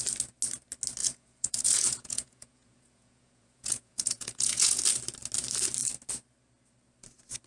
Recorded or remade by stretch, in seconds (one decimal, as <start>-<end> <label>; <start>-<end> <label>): 0.0-1.0 recorded; 1.0-4.8 remade; 4.8-7.5 recorded